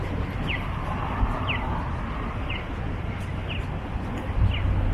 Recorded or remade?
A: recorded